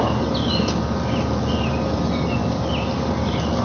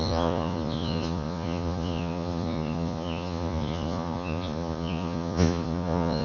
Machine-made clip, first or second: second